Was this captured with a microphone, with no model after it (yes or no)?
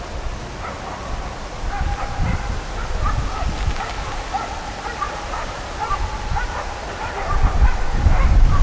yes